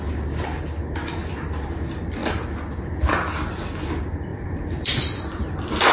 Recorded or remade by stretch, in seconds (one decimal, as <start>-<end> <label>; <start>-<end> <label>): 0.0-2.2 recorded; 2.2-2.8 remade; 2.8-4.3 recorded; 4.3-5.0 remade; 5.0-5.9 recorded